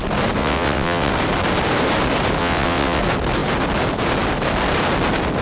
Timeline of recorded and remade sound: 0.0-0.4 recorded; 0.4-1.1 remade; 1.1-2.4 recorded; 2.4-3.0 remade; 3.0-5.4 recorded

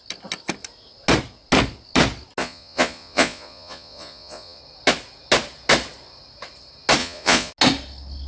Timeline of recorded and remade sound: 0.0-2.4 recorded; 2.4-4.6 remade; 4.6-7.0 recorded; 7.0-7.5 remade; 7.5-8.3 recorded